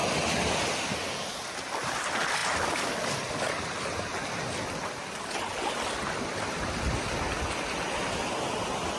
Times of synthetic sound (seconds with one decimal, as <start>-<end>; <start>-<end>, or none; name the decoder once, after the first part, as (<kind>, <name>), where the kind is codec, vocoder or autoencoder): none